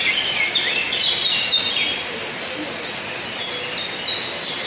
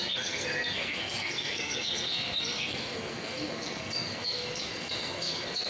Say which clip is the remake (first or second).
second